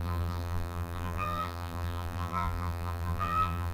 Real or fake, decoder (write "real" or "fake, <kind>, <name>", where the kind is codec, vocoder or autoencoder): fake, vocoder, BigVGAN v2